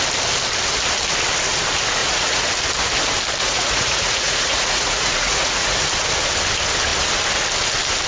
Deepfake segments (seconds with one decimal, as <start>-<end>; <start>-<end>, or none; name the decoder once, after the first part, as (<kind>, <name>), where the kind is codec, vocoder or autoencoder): 2.0-2.5 (vocoder, Vocos); 3.4-5.9